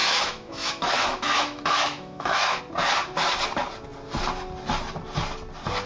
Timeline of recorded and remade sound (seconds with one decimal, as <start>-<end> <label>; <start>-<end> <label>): 0.0-2.6 remade; 2.6-5.9 recorded